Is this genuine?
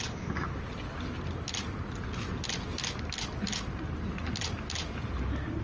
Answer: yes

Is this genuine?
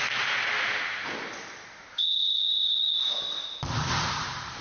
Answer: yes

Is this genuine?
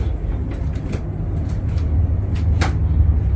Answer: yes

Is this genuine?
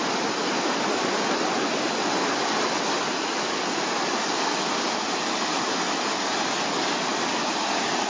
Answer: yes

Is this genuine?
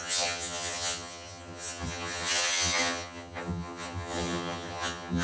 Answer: no